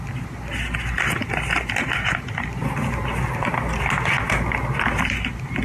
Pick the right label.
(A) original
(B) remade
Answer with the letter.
A